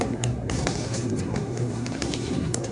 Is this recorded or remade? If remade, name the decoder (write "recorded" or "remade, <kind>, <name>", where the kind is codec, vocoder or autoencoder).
remade, codec, SNAC